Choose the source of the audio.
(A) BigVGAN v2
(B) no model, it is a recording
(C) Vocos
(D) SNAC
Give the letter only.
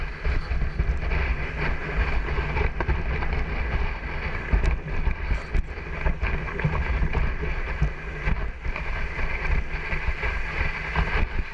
B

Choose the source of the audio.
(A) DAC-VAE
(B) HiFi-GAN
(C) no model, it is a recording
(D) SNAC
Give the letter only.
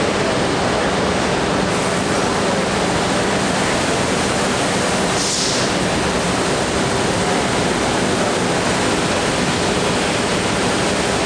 C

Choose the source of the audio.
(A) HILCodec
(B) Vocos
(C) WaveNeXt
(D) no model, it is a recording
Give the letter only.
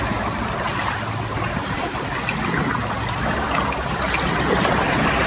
D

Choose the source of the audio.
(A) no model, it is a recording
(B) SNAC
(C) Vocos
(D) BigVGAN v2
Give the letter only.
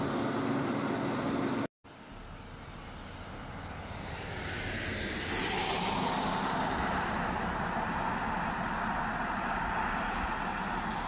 A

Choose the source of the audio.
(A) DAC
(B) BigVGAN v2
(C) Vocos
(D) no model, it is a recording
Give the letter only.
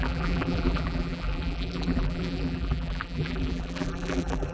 B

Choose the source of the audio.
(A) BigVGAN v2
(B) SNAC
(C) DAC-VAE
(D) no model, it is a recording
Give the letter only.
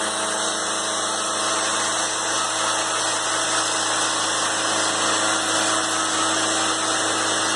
D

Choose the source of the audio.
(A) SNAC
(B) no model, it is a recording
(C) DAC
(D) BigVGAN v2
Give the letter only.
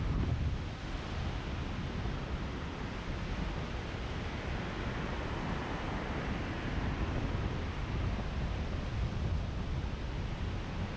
B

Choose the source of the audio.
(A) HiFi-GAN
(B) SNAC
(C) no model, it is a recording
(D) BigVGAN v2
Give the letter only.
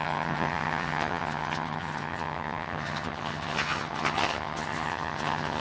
A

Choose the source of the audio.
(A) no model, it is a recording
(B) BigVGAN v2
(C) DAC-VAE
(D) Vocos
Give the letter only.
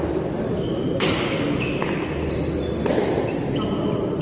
A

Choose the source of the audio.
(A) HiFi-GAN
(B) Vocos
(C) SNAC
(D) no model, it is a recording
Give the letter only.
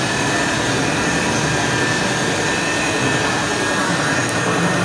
D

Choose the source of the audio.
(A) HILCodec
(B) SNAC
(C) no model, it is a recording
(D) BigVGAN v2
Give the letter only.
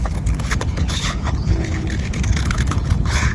A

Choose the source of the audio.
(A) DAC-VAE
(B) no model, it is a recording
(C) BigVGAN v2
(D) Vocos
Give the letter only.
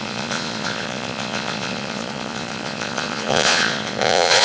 D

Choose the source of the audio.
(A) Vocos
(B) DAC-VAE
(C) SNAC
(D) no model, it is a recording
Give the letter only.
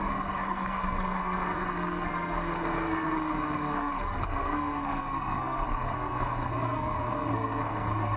C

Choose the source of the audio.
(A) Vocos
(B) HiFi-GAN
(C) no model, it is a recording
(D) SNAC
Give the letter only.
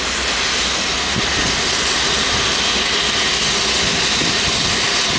C